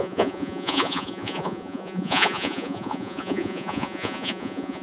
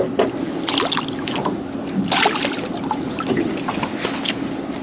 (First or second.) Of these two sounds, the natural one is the second